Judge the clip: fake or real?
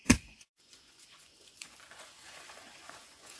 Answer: fake